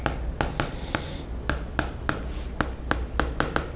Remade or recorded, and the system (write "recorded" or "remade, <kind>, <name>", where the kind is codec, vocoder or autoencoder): recorded